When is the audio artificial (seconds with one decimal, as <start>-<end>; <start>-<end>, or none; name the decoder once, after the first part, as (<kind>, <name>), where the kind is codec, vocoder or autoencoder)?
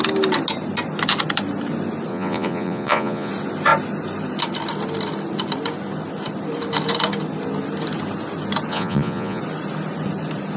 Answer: 2.1-3.3 (vocoder, Vocos); 8.7-9.4